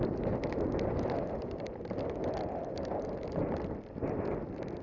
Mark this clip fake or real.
real